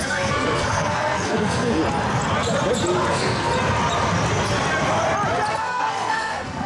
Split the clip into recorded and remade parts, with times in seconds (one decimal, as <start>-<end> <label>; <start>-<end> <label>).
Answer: 0.0-1.8 remade; 1.8-3.1 recorded; 3.1-3.5 remade; 3.5-5.5 recorded; 5.5-6.7 remade